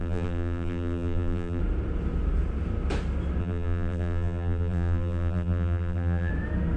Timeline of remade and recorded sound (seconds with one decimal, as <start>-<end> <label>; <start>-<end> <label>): 0.0-1.6 remade; 1.6-3.4 recorded; 3.4-6.3 remade; 6.3-6.8 recorded